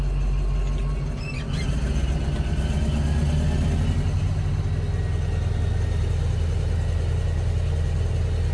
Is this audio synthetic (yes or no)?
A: no